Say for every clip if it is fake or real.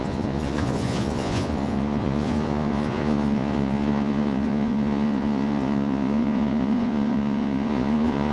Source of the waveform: fake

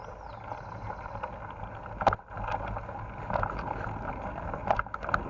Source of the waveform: real